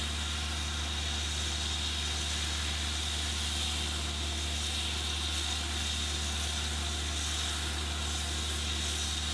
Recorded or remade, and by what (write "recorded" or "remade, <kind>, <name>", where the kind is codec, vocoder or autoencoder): recorded